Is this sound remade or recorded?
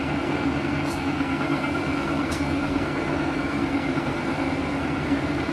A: remade